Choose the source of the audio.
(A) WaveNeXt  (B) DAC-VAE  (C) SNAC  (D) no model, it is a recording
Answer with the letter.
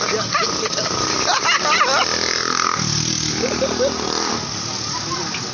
D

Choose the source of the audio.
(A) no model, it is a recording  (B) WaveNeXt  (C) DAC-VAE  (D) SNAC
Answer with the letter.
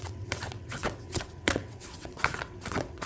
B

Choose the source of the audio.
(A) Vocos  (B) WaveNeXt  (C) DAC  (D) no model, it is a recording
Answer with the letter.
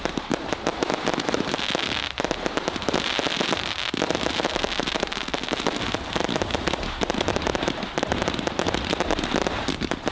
D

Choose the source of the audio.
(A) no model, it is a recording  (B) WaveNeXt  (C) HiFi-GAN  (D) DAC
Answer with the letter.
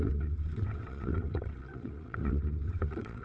B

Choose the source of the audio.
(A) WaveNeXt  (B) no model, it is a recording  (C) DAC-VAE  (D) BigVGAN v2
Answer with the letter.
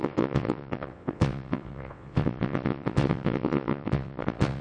A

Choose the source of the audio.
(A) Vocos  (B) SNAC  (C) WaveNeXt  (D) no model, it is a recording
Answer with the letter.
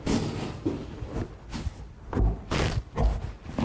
D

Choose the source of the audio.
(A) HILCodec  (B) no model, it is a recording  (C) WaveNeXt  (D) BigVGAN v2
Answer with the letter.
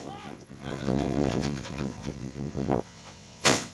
C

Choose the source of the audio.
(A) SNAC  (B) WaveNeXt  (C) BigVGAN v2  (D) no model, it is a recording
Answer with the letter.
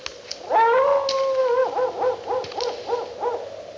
D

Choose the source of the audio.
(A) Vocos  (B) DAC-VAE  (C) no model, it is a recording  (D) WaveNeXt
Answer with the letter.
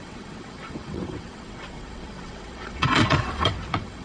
D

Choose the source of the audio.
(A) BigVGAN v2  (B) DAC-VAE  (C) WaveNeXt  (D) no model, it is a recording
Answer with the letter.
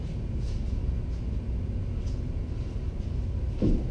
D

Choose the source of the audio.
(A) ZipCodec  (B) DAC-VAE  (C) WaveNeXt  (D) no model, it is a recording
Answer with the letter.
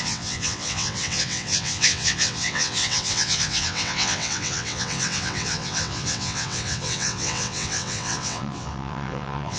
C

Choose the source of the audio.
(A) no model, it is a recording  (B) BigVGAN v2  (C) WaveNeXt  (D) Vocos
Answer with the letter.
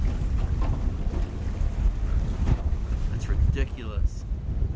A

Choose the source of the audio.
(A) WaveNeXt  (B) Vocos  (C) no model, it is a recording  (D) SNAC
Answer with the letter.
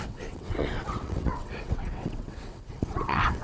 A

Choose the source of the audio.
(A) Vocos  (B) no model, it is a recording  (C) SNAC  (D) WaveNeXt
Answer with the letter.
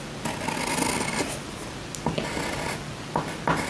B